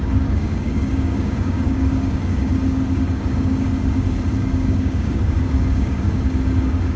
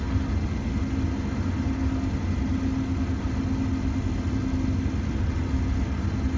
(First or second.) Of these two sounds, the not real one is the first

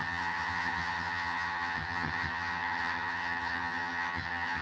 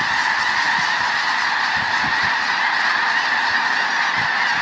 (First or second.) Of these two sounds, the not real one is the first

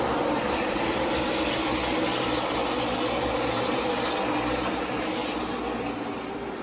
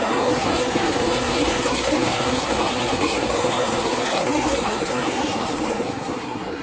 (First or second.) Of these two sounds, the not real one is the second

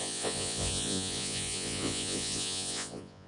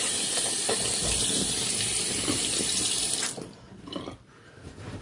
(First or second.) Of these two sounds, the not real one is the first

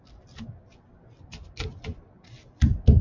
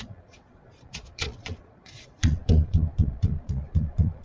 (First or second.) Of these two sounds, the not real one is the second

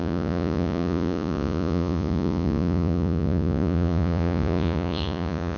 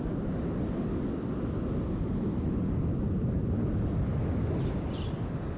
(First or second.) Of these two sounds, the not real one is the first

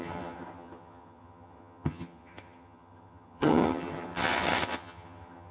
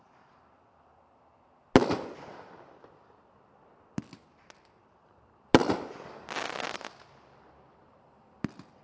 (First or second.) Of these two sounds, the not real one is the first